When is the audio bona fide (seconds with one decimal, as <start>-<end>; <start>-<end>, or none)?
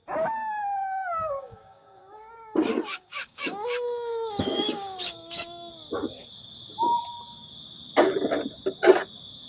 0.0-0.8; 5.7-9.5